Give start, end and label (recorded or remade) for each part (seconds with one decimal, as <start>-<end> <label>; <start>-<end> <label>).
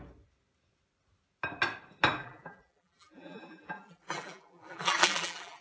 0.0-2.2 recorded; 2.2-5.6 remade